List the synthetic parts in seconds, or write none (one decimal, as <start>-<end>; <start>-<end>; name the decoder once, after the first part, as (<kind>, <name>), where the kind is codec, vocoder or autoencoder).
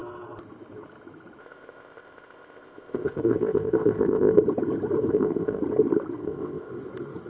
1.4-4.4 (codec, ZipCodec); 5.1-5.6; 6.2-6.7